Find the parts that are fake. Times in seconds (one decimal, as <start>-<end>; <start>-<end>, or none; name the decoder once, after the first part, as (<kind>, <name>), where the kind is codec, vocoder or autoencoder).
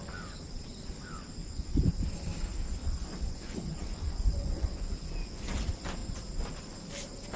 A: 1.4-1.9 (vocoder, Vocos); 2.8-5.4